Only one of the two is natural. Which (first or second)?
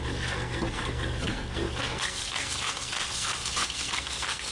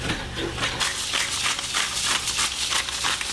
second